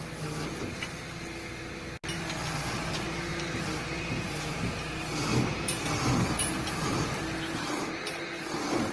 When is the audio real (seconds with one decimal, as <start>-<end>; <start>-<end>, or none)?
0.0-3.3; 4.7-5.3; 7.7-8.9